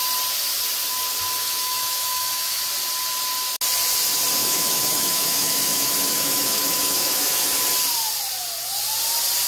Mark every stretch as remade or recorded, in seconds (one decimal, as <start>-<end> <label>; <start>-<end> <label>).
0.0-1.4 recorded; 1.4-2.6 remade; 2.6-4.4 recorded; 4.4-7.4 remade; 7.4-9.5 recorded